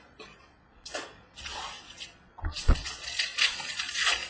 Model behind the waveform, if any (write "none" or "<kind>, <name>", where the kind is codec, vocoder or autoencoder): vocoder, Vocos